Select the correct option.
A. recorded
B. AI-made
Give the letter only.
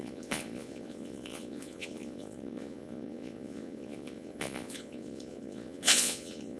B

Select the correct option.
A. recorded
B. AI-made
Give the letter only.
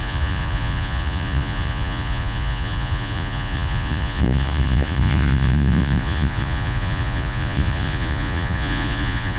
B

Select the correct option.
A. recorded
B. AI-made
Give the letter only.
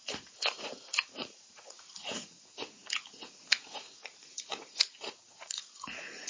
B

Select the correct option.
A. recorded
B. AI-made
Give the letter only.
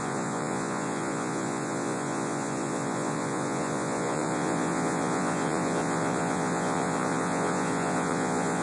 B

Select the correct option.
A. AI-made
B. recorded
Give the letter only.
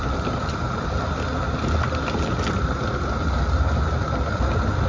B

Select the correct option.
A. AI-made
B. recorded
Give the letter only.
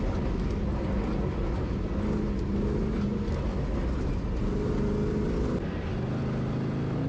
B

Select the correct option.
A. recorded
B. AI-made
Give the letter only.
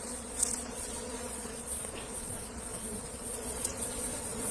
B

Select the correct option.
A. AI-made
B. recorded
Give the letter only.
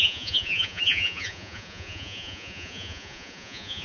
A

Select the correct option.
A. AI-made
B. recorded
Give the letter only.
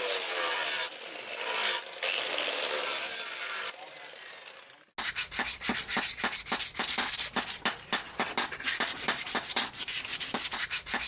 B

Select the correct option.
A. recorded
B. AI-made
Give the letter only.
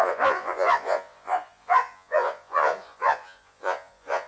B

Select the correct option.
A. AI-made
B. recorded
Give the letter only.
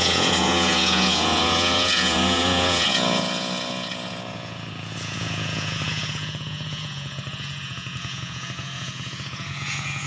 A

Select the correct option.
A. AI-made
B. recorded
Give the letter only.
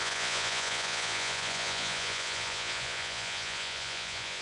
A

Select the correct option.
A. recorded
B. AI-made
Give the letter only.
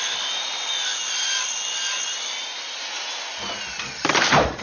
A